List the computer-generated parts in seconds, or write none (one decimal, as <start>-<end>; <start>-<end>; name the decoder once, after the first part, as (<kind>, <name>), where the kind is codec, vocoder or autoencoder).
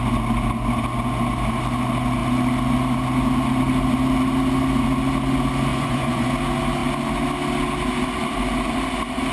5.7-6.3 (vocoder, Vocos)